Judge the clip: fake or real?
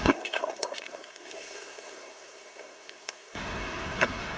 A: fake